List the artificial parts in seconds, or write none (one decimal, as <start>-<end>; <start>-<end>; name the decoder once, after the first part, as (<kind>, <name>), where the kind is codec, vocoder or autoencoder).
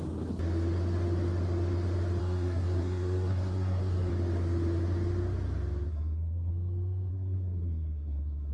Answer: 2.2-4.1 (codec, SNAC); 5.9-6.5; 7.1-8.5